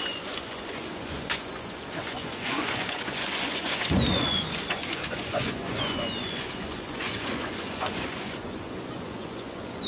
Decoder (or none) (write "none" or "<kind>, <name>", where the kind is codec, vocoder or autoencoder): vocoder, Vocos